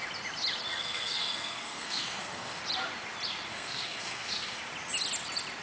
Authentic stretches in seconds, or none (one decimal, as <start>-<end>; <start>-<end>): 0.0-0.7; 2.6-3.5; 4.6-5.6